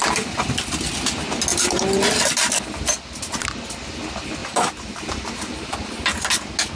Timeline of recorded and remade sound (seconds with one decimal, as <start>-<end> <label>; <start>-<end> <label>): 0.0-1.5 recorded; 1.5-2.3 remade; 2.3-4.4 recorded; 4.4-6.0 remade; 6.0-6.8 recorded